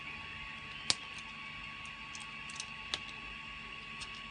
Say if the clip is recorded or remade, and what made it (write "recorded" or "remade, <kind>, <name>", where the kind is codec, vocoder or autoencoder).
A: recorded